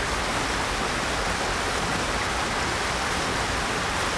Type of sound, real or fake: real